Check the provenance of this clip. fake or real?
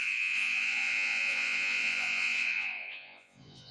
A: fake